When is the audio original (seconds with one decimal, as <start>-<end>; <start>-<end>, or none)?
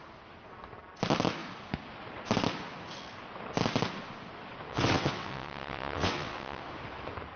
0.0-4.7; 6.6-7.4